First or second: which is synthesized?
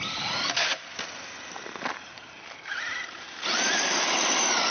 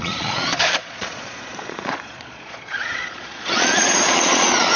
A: second